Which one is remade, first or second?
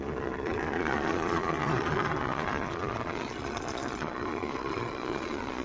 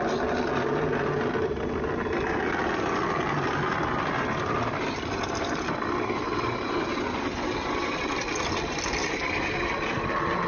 first